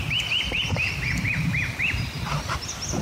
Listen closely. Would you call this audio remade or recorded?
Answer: remade